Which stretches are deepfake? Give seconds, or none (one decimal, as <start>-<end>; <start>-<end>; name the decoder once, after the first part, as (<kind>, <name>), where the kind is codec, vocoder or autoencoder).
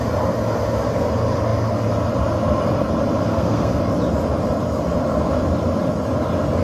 3.3-3.8 (codec, SNAC)